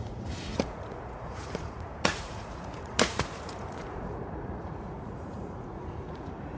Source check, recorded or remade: remade